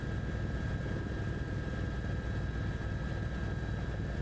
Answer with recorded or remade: recorded